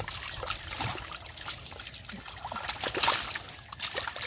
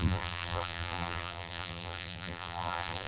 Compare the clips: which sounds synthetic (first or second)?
second